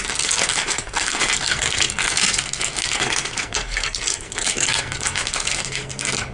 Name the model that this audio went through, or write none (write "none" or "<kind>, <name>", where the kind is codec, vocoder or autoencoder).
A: codec, SNAC